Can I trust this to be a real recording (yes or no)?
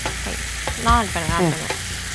yes